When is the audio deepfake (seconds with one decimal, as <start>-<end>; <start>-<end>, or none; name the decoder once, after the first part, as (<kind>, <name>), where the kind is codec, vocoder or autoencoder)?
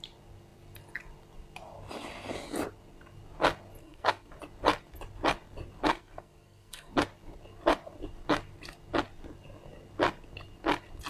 3.8-4.3 (codec, SNAC); 5.9-6.9